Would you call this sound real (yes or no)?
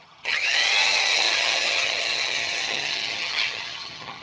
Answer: no